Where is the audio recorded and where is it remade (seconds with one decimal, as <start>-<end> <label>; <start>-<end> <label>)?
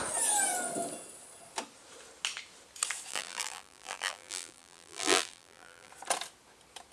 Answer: 0.0-3.1 recorded; 3.1-5.9 remade; 5.9-6.9 recorded